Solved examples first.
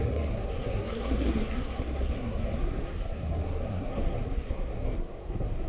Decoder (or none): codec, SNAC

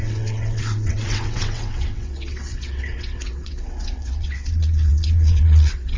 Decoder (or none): vocoder, WaveNeXt